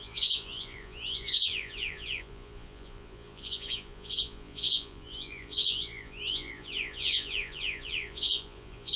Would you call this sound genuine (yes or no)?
no